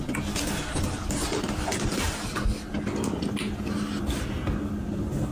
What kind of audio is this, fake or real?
real